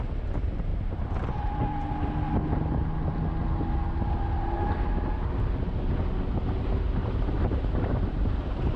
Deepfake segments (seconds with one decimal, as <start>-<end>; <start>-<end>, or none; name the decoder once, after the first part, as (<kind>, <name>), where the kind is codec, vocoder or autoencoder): 0.7-1.4 (vocoder, BigVGAN v2); 7.0-8.8